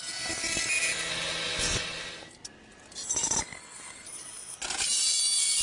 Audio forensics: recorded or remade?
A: recorded